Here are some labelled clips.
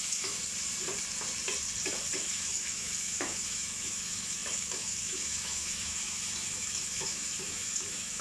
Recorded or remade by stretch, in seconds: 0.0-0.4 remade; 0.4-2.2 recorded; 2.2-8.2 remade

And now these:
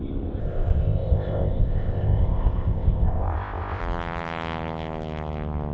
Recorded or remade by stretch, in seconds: 0.0-0.4 recorded; 0.4-3.8 remade; 3.8-5.7 recorded

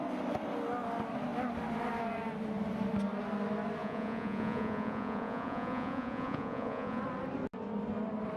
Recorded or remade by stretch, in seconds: 0.0-3.8 recorded; 3.8-7.0 remade; 7.0-8.4 recorded